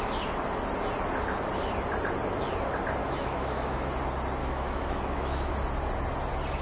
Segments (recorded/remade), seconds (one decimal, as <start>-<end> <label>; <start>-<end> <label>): 0.0-3.0 recorded; 3.0-3.9 remade; 3.9-4.4 recorded; 4.4-5.5 remade; 5.5-6.6 recorded